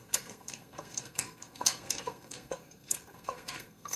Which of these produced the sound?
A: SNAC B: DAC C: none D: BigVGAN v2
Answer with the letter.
A